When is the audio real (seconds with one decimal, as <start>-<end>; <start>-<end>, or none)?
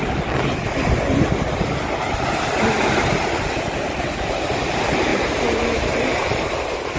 0.0-4.2